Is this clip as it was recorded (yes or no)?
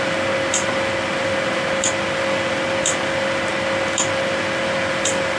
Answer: yes